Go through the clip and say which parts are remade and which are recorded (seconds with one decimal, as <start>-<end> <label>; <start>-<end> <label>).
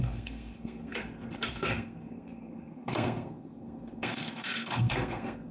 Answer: 0.0-5.5 remade